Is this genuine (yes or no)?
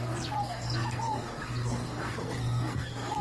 no